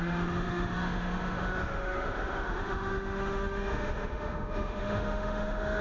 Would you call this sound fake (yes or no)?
yes